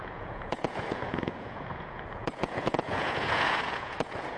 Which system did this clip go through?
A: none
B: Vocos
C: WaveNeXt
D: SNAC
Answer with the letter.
B